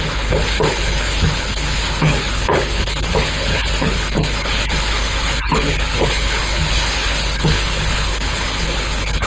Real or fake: fake